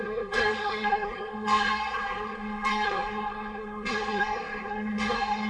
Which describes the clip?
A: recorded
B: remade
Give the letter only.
B